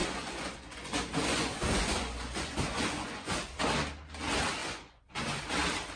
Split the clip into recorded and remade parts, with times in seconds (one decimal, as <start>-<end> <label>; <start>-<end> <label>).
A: 0.0-3.6 remade; 3.6-4.6 recorded; 4.6-5.4 remade; 5.4-6.0 recorded